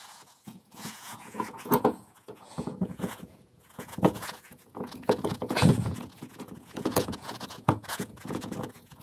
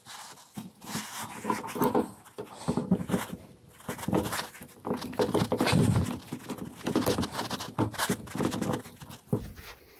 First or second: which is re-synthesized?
first